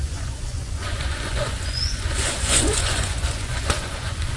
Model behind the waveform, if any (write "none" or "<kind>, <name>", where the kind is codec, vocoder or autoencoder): vocoder, Vocos